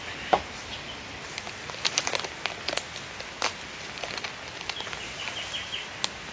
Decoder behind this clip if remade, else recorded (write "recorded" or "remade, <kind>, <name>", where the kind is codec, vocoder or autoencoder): recorded